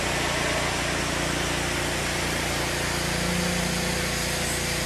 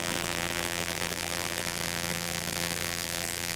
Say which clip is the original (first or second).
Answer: first